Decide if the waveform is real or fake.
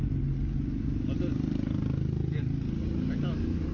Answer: real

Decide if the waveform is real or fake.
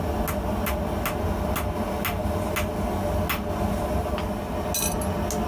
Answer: real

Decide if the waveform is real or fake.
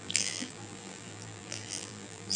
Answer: fake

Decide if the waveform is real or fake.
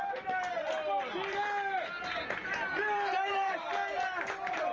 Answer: real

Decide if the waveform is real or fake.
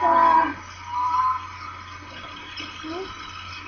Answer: real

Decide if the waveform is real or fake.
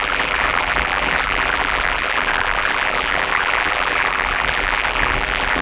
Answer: fake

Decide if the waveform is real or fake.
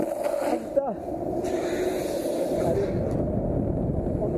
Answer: real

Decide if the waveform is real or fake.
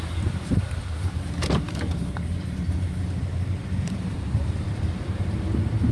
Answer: fake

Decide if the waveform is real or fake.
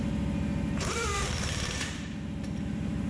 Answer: fake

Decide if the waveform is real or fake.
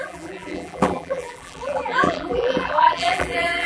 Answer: fake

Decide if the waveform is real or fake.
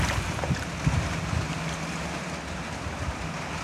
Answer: real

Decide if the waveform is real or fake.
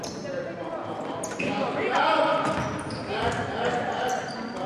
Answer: real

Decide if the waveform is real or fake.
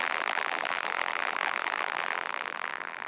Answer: fake